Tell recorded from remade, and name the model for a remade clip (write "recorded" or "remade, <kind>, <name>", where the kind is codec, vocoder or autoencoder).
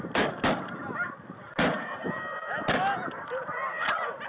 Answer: recorded